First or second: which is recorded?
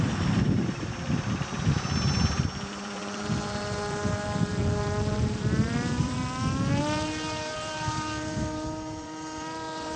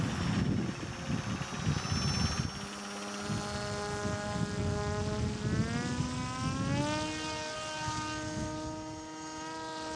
second